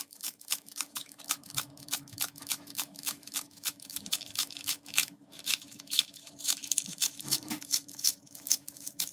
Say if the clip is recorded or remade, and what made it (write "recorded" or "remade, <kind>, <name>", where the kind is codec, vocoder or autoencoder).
remade, autoencoder, DAC-VAE